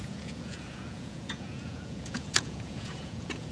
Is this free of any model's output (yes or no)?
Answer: no